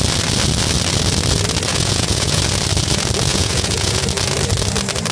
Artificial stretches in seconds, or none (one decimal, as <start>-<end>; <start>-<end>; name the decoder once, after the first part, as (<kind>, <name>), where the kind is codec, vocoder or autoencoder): 1.7-2.4 (vocoder, Vocos); 3.3-4.0